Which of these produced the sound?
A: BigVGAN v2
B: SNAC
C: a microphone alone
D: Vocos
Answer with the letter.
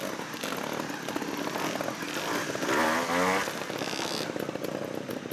C